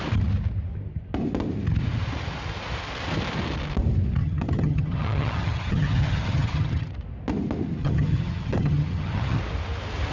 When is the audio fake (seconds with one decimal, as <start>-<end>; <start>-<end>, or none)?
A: 4.2-6.9; 7.8-9.4